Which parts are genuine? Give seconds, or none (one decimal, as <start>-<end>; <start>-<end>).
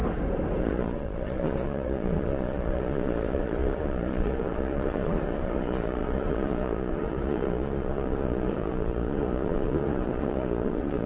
0.0-0.6